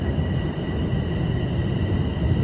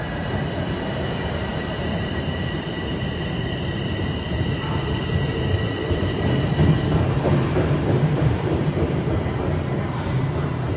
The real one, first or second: first